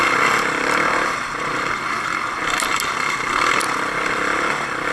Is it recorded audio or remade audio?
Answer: recorded